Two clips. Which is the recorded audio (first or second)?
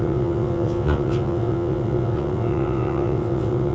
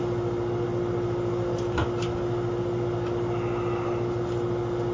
second